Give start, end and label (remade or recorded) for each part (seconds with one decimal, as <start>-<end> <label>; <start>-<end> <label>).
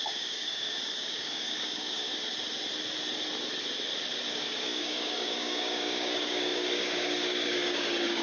0.0-2.1 remade; 2.1-4.3 recorded; 4.3-8.2 remade